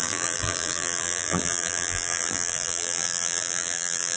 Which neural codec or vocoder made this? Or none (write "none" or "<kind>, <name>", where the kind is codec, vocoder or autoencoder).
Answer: vocoder, BigVGAN v2